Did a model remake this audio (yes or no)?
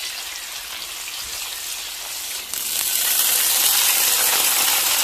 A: no